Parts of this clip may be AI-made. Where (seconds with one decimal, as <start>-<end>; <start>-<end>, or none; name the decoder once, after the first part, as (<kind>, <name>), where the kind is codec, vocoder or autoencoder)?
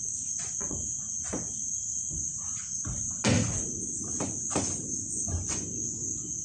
0.0-1.3 (vocoder, Vocos); 5.1-6.4